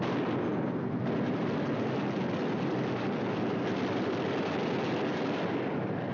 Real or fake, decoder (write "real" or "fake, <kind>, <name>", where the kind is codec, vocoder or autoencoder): real